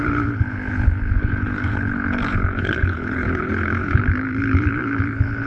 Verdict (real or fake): fake